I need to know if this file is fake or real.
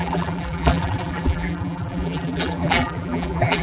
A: fake